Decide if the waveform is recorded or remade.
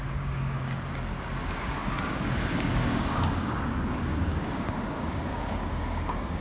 remade